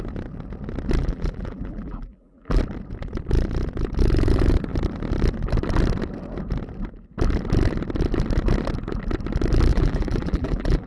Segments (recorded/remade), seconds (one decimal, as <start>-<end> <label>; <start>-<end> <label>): 0.0-1.0 recorded; 1.0-2.6 remade; 2.6-9.7 recorded; 9.7-10.9 remade